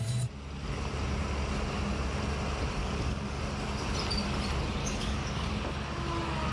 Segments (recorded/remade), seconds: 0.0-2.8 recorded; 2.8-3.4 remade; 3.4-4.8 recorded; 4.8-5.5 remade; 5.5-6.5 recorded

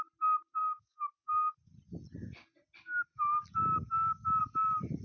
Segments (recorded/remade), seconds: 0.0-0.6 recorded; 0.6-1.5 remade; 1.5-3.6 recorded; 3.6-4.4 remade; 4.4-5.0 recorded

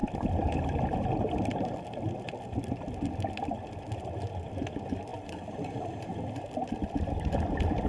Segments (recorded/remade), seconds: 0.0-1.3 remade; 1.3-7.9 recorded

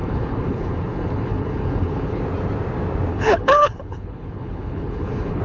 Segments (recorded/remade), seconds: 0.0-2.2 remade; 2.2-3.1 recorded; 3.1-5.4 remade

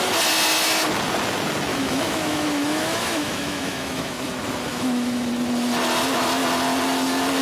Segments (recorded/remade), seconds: 0.0-1.7 recorded; 1.7-4.3 remade; 4.3-4.7 recorded; 4.7-5.3 remade; 5.3-7.4 recorded